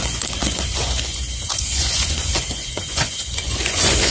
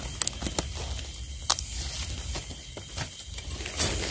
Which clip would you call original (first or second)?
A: second